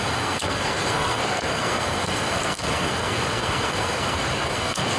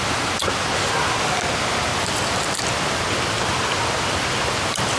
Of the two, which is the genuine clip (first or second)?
second